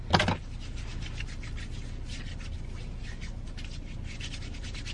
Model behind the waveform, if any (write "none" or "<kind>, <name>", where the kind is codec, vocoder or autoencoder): none